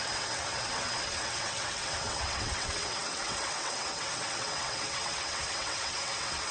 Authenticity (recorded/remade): remade